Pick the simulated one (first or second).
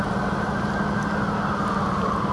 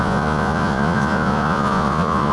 second